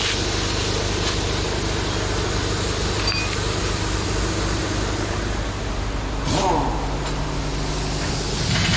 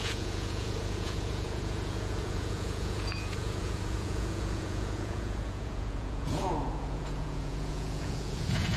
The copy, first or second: second